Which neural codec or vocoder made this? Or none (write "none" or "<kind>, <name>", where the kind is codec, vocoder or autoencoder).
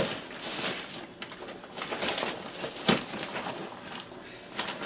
none